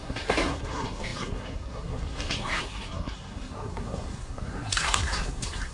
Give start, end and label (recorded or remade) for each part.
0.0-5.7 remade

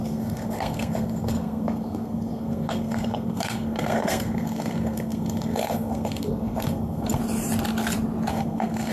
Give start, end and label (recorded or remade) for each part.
0.0-7.2 remade; 7.2-8.3 recorded; 8.3-8.9 remade

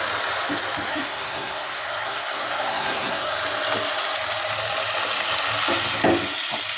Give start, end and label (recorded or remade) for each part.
0.0-0.9 recorded; 0.9-3.4 remade; 3.4-6.8 recorded

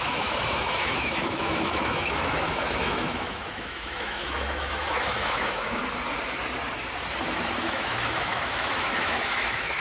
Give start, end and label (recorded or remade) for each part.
0.0-5.8 remade; 5.8-7.6 recorded; 7.6-9.8 remade

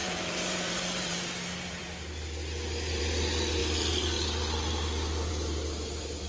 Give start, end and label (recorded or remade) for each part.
0.0-1.3 remade; 1.3-6.3 recorded

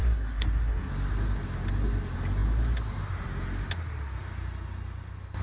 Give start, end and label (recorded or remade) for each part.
0.0-0.9 remade; 0.9-5.4 recorded

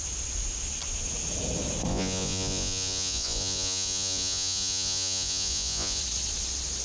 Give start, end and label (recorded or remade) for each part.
0.0-1.9 recorded; 1.9-6.0 remade; 6.0-6.8 recorded